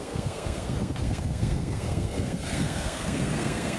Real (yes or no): no